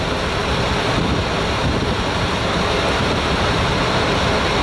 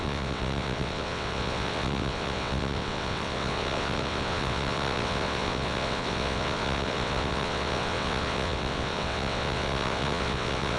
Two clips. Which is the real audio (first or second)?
first